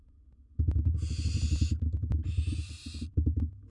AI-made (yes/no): no